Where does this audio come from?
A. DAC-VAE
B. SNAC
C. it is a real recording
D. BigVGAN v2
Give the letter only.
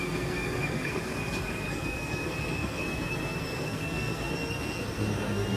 B